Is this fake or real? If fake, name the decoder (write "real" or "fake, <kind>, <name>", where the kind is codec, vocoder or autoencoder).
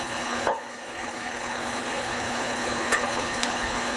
fake, codec, HILCodec